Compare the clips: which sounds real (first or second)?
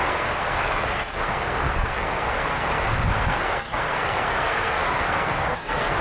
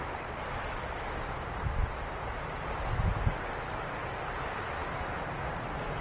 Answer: second